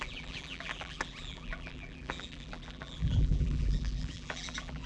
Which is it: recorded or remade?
remade